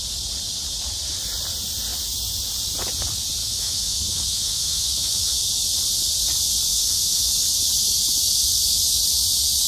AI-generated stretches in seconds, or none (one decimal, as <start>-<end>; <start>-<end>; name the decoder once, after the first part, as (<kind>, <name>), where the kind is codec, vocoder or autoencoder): 3.4-5.5 (autoencoder, DAC-VAE); 6.7-7.3